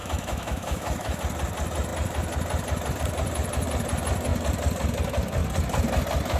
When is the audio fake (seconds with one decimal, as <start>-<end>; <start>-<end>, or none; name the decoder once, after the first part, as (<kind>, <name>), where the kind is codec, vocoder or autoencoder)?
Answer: 0.0-1.2 (autoencoder, DAC-VAE)

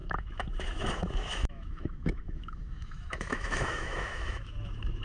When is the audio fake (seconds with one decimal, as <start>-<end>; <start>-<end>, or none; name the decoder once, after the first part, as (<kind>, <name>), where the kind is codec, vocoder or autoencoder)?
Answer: 0.0-5.0 (autoencoder, DAC-VAE)

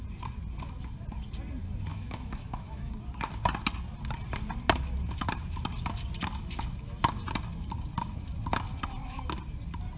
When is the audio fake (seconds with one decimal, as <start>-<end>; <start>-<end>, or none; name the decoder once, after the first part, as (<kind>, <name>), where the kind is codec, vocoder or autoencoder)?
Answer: 1.9-2.9 (autoencoder, DAC-VAE)

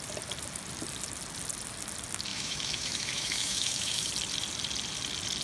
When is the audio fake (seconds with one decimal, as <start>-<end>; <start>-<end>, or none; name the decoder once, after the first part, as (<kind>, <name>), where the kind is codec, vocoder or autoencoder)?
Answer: 2.3-4.1 (autoencoder, DAC-VAE)

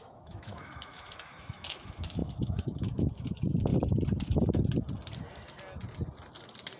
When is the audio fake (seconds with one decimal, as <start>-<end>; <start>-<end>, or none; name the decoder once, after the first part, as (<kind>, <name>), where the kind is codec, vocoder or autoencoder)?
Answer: 0.0-3.7 (autoencoder, DAC-VAE)